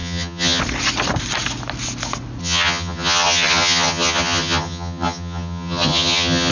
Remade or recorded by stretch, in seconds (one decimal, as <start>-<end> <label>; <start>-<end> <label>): 0.0-0.6 remade; 0.6-2.4 recorded; 2.4-6.5 remade